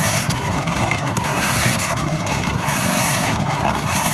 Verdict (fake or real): fake